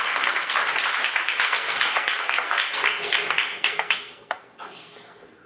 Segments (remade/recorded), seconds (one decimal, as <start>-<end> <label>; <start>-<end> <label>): 0.0-0.6 remade; 0.6-1.2 recorded; 1.2-5.5 remade